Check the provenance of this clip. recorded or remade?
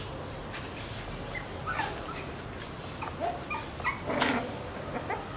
recorded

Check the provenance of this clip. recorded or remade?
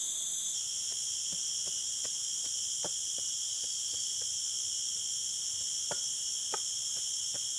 recorded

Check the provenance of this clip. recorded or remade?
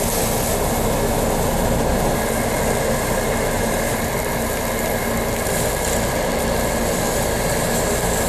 recorded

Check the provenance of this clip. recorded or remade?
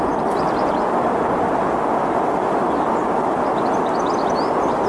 recorded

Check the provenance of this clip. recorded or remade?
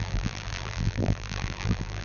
remade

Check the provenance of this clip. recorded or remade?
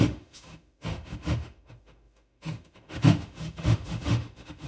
remade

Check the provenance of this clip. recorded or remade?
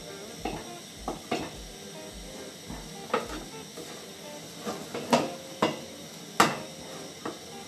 recorded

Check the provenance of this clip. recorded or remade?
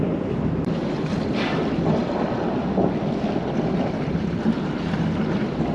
remade